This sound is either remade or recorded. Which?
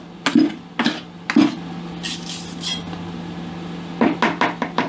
recorded